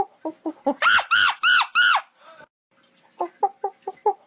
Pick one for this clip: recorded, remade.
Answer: recorded